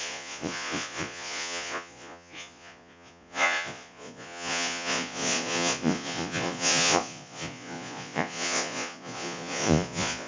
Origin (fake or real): fake